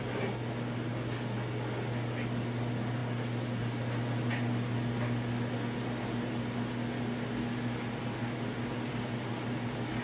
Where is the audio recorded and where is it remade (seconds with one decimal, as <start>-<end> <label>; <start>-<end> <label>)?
0.0-10.0 recorded